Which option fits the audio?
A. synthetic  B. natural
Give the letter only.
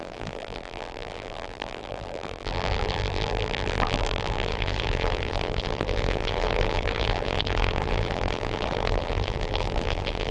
A